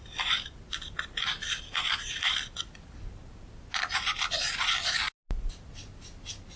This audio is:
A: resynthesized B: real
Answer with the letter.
B